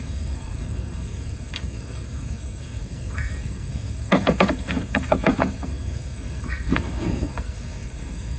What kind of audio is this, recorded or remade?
remade